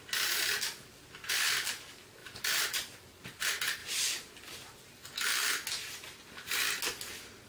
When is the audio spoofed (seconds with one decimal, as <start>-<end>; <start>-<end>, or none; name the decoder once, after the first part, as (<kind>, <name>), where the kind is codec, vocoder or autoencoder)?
2.2-3.0 (vocoder, BigVGAN v2); 3.8-4.5